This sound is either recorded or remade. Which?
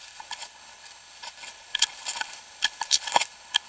remade